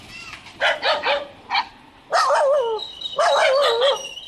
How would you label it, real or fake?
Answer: real